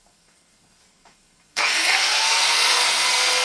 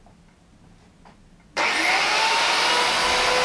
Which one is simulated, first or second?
first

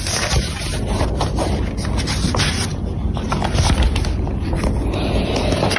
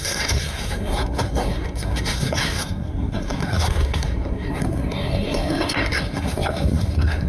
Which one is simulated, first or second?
second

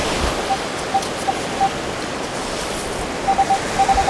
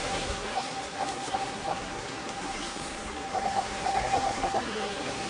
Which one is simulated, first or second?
second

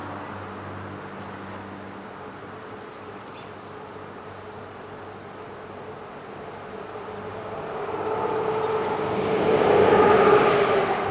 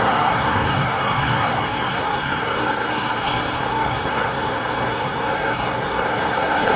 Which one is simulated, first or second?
second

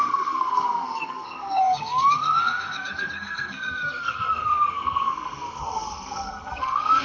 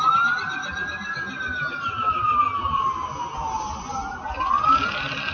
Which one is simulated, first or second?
first